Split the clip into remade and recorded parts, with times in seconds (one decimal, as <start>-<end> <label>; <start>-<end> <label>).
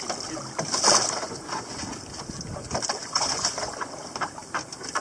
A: 0.0-1.2 recorded; 1.2-1.8 remade; 1.8-3.0 recorded; 3.0-3.9 remade; 3.9-5.0 recorded